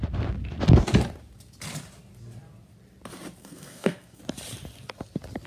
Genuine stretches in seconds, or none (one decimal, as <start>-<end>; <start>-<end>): 0.0-3.4; 4.2-5.5